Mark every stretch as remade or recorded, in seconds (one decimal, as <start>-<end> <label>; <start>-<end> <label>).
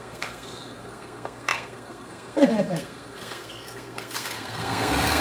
0.0-5.2 remade